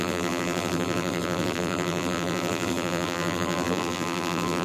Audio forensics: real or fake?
fake